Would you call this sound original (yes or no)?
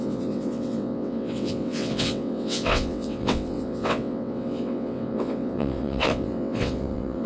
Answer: no